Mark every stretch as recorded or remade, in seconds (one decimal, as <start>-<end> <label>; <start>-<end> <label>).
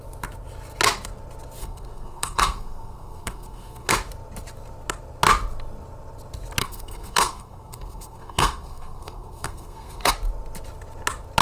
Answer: 0.0-1.6 recorded; 1.6-3.9 remade; 3.9-6.6 recorded; 6.6-10.1 remade; 10.1-11.4 recorded